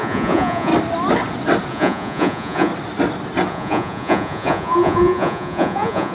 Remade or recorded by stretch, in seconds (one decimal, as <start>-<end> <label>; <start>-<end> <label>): 0.0-0.7 remade; 0.7-1.7 recorded; 1.7-2.7 remade; 2.7-3.5 recorded; 3.5-6.1 remade